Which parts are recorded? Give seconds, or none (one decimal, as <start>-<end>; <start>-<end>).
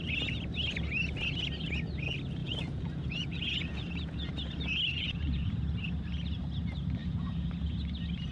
0.0-2.4; 4.3-4.9; 5.6-7.0; 7.5-8.3